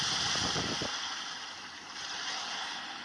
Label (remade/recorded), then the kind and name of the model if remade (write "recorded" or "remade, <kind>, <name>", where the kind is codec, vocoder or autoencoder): recorded